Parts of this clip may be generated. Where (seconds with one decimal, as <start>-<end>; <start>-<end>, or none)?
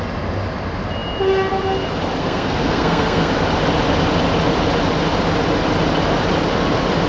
2.2-3.3